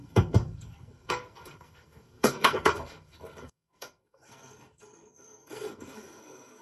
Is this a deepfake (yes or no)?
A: yes